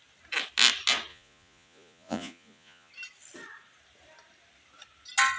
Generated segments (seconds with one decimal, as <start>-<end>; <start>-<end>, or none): 1.1-2.9

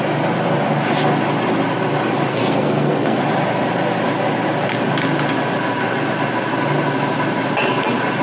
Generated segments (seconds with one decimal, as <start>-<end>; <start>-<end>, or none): 2.3-3.2

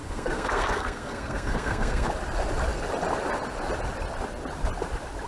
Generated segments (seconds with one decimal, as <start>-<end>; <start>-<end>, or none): 0.0-2.1